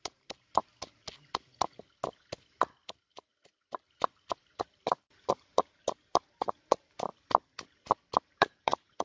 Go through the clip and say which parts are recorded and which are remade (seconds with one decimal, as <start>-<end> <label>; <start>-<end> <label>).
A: 0.0-0.6 remade; 0.6-5.3 recorded; 5.3-7.1 remade; 7.1-8.1 recorded; 8.1-9.0 remade